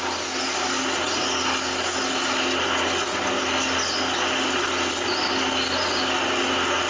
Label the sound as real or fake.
real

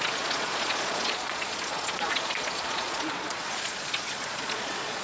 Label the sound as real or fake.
fake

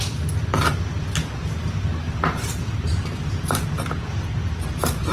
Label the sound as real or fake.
real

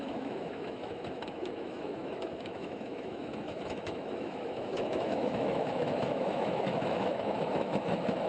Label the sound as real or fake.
fake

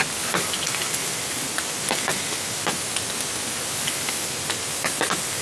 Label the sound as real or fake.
real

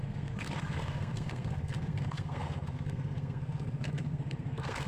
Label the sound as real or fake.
fake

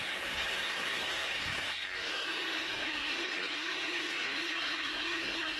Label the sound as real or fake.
fake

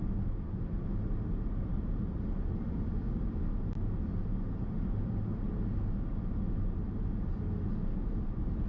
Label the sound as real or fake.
real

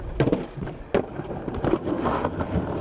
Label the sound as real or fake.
real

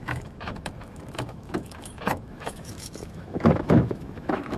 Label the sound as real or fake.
fake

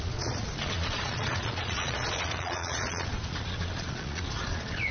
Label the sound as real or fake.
fake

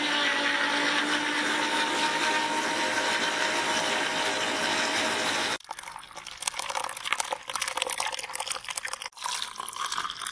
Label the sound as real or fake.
real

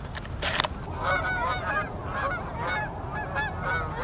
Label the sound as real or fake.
real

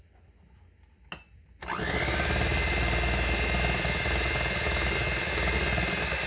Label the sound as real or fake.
real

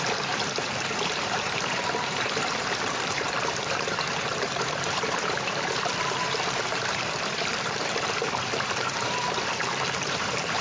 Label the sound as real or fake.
fake